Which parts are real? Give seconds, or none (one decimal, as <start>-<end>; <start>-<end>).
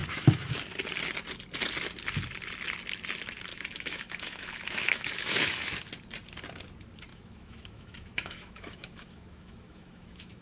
0.7-3.5; 5.9-7.1